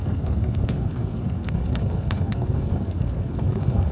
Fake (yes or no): yes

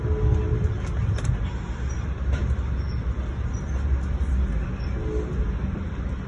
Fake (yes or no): no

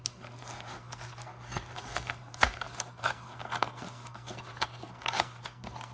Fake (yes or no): yes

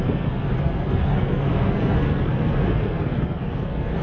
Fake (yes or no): yes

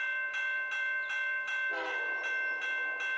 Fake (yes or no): no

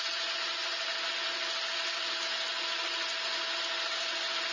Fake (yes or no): no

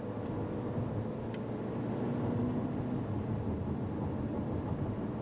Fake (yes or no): no